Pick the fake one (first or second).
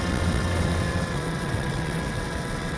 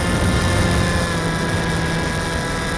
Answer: first